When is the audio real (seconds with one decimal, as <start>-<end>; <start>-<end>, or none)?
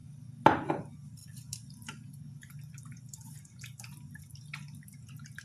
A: 0.0-1.2; 3.5-5.4